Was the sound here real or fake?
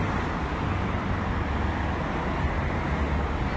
real